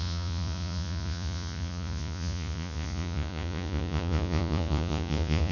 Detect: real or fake fake